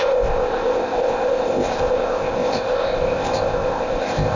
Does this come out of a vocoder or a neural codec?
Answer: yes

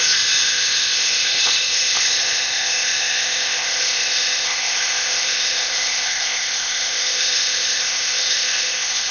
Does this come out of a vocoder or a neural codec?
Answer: yes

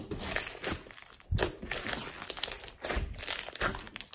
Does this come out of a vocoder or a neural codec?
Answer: no